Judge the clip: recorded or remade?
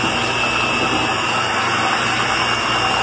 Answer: recorded